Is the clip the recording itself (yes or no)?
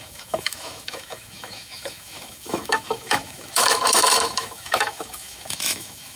no